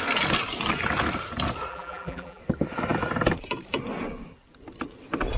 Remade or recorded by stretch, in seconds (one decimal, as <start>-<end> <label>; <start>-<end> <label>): 0.0-1.7 recorded; 1.7-2.4 remade; 2.4-5.4 recorded